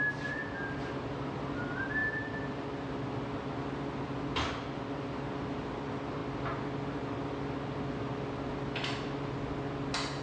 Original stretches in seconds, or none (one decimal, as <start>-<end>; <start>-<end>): 0.0-2.0; 2.9-10.2